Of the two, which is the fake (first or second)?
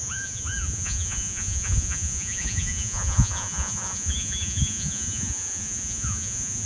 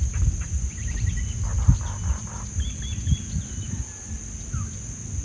first